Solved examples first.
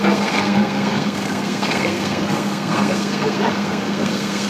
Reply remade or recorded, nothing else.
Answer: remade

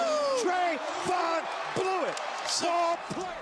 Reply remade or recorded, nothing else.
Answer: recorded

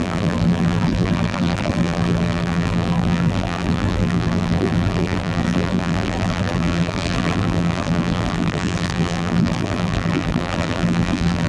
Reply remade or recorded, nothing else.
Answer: remade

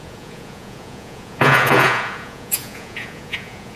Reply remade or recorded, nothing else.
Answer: remade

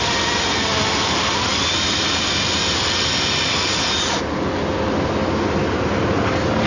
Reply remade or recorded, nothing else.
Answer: recorded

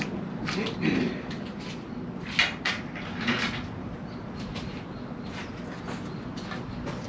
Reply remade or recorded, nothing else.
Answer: recorded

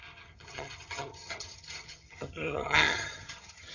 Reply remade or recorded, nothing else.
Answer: remade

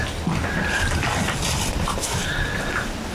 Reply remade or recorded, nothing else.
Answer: recorded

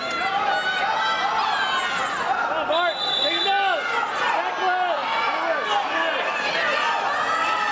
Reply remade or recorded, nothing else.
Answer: recorded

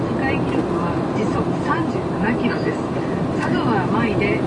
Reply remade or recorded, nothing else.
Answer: recorded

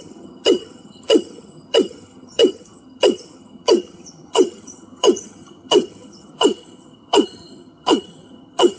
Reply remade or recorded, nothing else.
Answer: remade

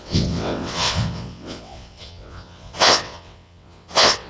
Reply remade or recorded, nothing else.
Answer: remade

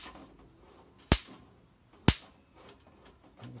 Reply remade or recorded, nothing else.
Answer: recorded